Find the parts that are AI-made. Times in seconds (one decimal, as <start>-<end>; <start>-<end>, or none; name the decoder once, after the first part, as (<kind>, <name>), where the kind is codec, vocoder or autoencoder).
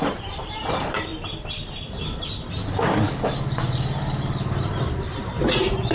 0.0-1.1 (vocoder, BigVGAN v2); 4.6-5.9